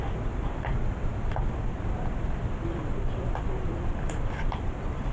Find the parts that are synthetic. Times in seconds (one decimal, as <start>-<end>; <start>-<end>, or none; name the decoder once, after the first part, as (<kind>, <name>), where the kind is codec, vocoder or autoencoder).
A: 2.8-5.1 (vocoder, BigVGAN v2)